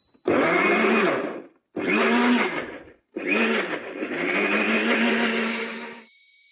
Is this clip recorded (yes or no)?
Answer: yes